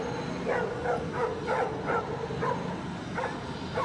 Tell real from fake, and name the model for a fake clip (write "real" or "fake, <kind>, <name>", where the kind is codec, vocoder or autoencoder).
real